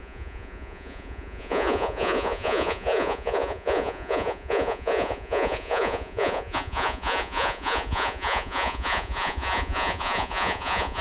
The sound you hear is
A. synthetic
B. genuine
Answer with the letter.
A